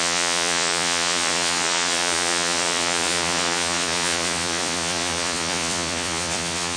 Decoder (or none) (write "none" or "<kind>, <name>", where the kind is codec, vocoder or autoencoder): vocoder, Vocos